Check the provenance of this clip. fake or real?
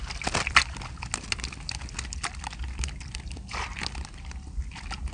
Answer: real